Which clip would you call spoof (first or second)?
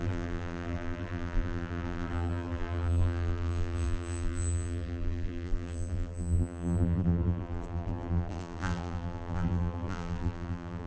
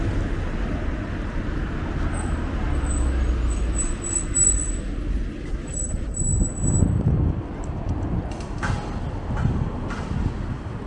first